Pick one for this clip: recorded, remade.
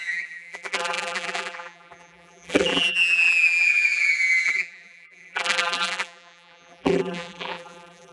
remade